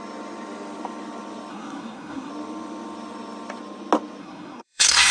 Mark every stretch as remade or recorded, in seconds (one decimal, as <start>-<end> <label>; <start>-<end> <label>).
0.0-1.5 recorded; 1.5-2.3 remade; 2.3-4.2 recorded; 4.2-5.1 remade